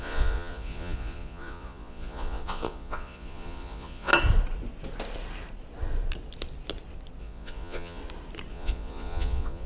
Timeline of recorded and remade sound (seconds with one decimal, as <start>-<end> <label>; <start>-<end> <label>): 0.0-4.1 remade; 4.1-7.2 recorded; 7.2-8.0 remade; 8.0-8.5 recorded; 8.5-9.7 remade